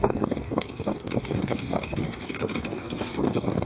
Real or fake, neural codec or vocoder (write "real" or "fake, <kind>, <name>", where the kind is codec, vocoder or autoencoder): fake, codec, DAC